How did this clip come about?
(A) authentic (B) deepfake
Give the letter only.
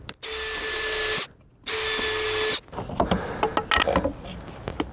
A